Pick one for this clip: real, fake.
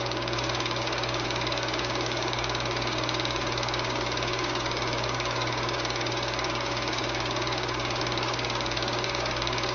fake